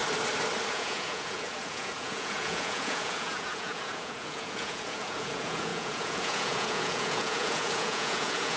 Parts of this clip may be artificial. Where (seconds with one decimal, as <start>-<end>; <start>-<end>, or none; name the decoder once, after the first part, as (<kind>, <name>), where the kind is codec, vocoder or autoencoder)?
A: 0.7-8.6 (vocoder, Vocos)